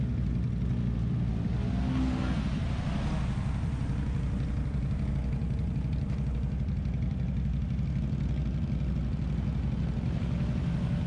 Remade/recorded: recorded